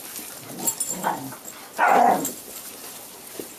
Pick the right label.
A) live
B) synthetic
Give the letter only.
A